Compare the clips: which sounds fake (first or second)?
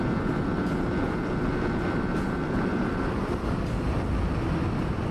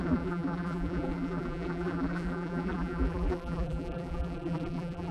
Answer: second